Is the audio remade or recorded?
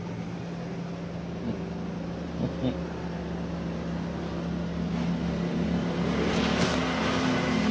recorded